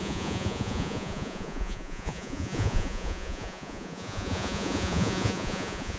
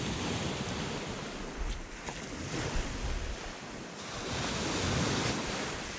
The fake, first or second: first